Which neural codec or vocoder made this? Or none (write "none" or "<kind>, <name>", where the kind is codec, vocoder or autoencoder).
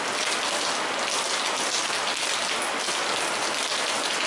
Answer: none